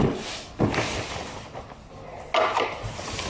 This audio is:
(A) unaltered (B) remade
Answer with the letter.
A